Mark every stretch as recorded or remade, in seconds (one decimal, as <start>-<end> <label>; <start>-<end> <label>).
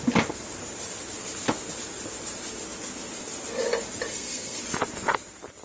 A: 0.0-4.1 recorded; 4.1-4.6 remade; 4.6-5.6 recorded